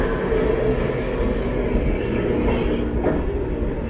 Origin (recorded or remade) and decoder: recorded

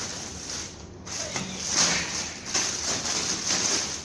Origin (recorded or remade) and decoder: recorded